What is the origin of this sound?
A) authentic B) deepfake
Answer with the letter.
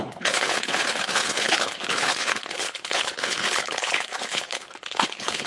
B